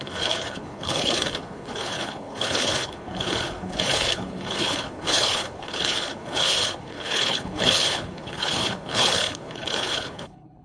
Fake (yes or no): yes